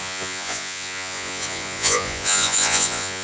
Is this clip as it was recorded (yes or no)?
no